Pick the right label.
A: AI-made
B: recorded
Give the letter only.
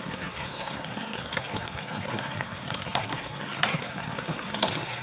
A